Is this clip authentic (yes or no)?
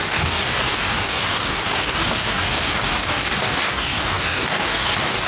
no